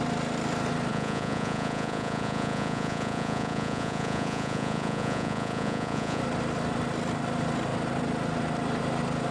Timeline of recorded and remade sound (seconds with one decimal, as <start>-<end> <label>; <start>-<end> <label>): 0.0-0.9 recorded; 0.9-6.2 remade; 6.2-9.3 recorded